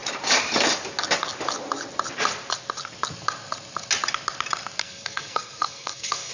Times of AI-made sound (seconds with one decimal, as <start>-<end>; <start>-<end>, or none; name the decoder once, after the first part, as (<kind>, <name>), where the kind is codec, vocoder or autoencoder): 4.8-6.3 (codec, SNAC)